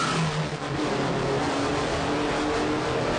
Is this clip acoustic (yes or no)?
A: yes